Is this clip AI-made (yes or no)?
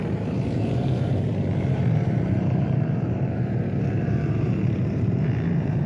yes